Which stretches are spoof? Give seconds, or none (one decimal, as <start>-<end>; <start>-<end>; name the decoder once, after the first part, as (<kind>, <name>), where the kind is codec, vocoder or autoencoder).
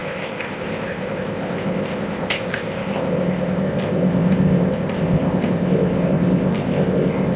0.0-7.4 (codec, ZipCodec)